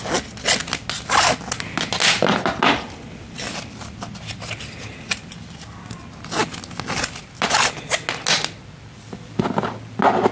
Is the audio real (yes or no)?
yes